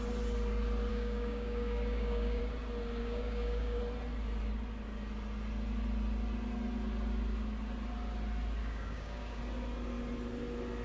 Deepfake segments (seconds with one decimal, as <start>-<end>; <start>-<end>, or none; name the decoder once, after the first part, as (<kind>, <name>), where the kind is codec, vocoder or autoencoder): 0.9-2.4 (codec, DAC); 3.0-3.8; 8.6-9.4